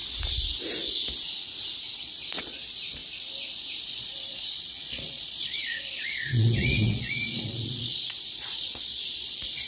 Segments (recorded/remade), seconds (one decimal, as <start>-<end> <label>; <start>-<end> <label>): 0.0-2.0 recorded; 2.0-3.0 remade; 3.0-3.9 recorded; 3.9-9.7 remade